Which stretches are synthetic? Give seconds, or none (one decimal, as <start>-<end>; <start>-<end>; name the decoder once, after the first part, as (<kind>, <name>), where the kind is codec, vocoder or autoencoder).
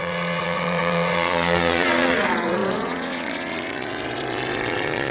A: 0.0-5.1 (vocoder, Vocos)